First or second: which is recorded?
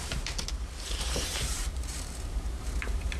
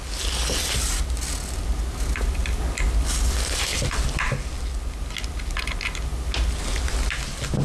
second